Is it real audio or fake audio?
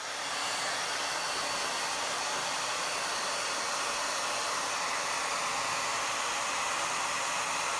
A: real